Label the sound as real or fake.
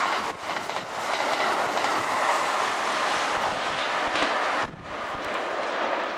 real